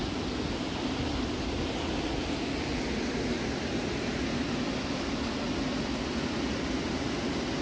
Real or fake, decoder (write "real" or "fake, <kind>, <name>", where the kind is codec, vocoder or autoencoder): real